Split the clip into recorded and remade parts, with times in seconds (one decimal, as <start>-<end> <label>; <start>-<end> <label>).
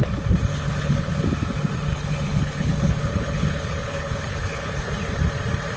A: 0.0-0.5 recorded; 0.5-1.1 remade; 1.1-1.9 recorded; 1.9-4.9 remade; 4.9-5.8 recorded